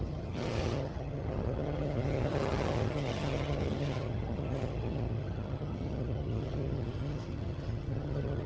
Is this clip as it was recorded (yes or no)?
no